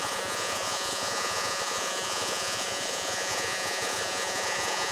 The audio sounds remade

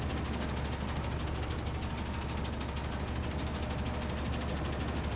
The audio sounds recorded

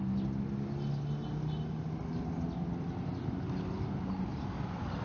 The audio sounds recorded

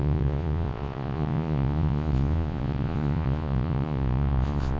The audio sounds remade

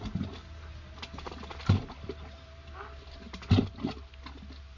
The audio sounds recorded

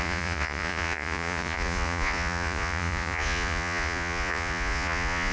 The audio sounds remade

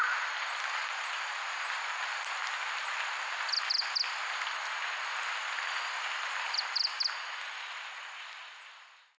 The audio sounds recorded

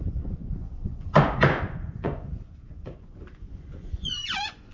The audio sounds remade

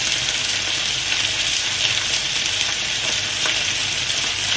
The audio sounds recorded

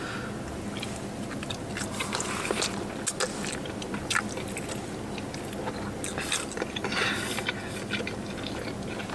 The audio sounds recorded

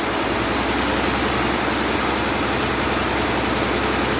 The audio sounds recorded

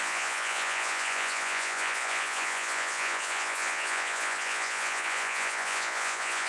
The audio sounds remade